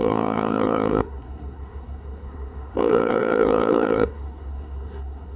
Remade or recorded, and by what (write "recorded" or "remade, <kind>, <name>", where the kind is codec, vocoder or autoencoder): remade, codec, SNAC